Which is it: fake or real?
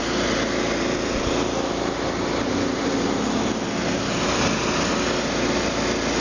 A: real